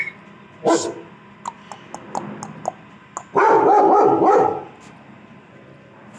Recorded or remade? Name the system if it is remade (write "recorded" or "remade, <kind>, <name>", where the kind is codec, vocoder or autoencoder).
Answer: recorded